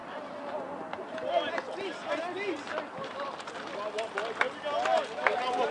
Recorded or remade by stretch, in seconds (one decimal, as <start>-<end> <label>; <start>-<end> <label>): 0.0-5.7 recorded